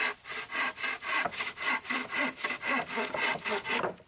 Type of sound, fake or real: real